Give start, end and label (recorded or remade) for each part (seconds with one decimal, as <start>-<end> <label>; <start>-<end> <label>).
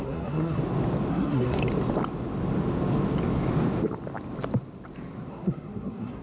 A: 0.0-0.6 remade; 0.6-1.1 recorded; 1.1-1.6 remade; 1.6-5.3 recorded; 5.3-6.2 remade